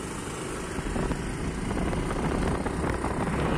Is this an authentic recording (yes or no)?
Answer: yes